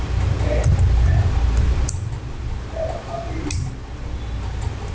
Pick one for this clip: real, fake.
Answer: real